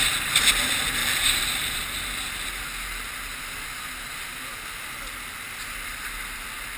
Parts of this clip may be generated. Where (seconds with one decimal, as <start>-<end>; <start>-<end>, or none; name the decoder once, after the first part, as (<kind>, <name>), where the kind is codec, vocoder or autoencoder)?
1.0-2.0 (vocoder, BigVGAN v2)